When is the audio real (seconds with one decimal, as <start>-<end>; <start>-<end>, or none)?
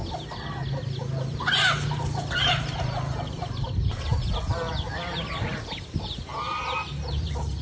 0.0-2.3; 4.1-5.8